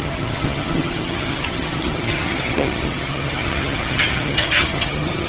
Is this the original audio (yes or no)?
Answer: no